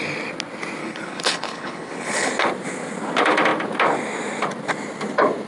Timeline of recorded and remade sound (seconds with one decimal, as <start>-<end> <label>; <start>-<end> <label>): 0.0-0.8 recorded; 0.8-2.3 remade; 2.3-5.5 recorded